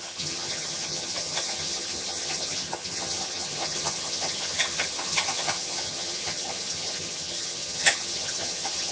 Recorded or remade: remade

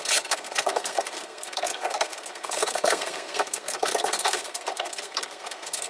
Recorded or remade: remade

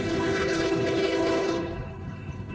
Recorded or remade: remade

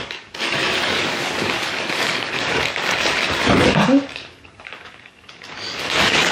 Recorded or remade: remade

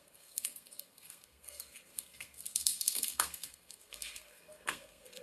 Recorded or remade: remade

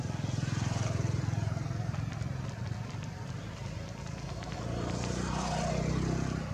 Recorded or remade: recorded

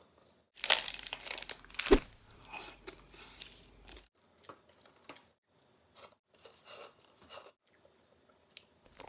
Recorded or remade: recorded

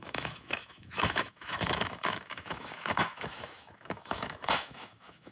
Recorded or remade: remade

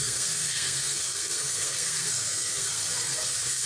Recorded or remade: remade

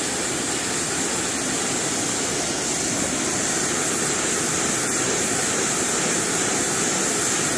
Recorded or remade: recorded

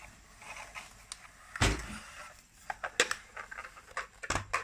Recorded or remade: recorded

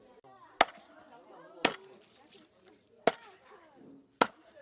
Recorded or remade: recorded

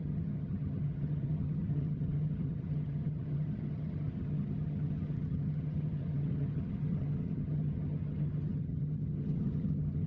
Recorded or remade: remade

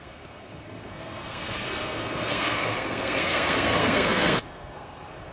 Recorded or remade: remade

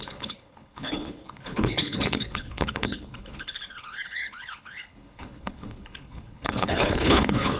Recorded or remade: remade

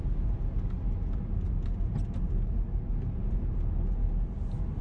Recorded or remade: recorded